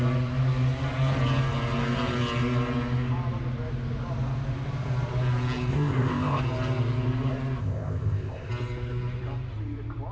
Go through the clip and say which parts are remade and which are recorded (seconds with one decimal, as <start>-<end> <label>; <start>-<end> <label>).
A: 0.0-5.7 recorded; 5.7-6.4 remade; 6.4-7.6 recorded; 7.6-8.5 remade; 8.5-10.1 recorded